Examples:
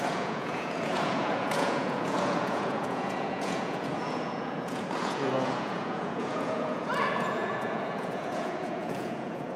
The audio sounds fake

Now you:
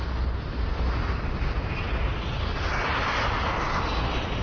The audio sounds real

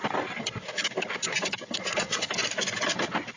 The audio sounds real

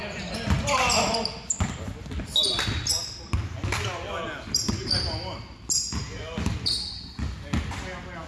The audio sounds real